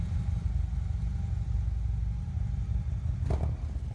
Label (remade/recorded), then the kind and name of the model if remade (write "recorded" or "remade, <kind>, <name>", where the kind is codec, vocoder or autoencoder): recorded